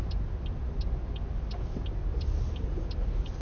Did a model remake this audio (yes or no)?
no